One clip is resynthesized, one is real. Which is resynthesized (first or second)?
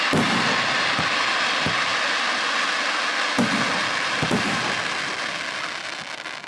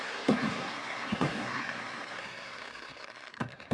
second